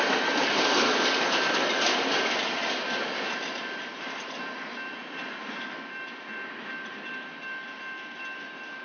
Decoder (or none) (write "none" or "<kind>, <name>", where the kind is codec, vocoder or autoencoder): none